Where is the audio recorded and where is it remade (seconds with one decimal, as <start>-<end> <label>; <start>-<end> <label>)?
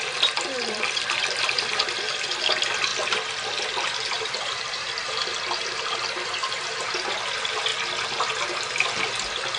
0.0-7.7 remade; 7.7-9.6 recorded